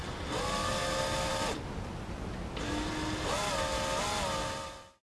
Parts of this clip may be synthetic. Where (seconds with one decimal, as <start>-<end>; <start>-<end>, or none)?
none